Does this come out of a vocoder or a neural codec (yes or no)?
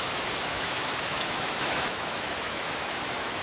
yes